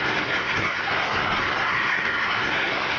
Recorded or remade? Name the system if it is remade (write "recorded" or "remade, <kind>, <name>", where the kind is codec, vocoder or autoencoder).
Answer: remade, codec, SNAC